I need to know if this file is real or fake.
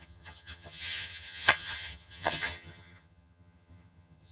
fake